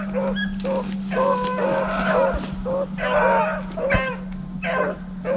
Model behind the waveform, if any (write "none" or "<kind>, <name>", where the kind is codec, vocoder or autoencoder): none